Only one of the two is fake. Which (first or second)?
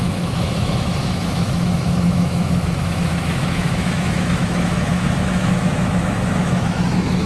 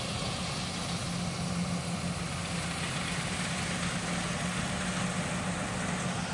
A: first